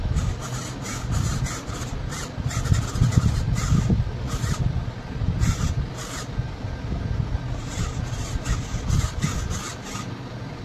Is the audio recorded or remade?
recorded